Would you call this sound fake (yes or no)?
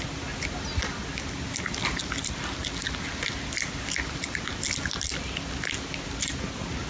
no